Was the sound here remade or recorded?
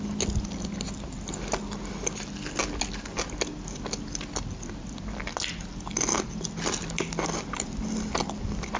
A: recorded